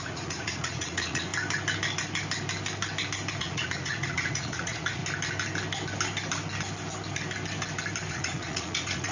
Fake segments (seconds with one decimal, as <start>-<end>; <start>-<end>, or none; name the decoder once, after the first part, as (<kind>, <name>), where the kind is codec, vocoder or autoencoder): 0.0-1.3 (vocoder, Vocos); 3.4-5.0; 8.1-9.1